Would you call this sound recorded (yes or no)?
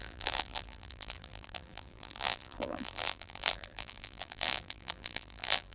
no